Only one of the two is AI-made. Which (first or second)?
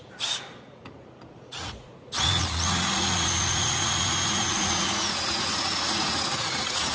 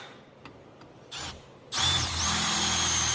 first